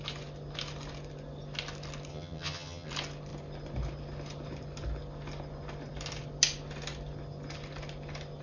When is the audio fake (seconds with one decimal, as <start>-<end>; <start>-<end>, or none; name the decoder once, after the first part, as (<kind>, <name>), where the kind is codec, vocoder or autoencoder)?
2.1-2.9 (vocoder, HiFi-GAN)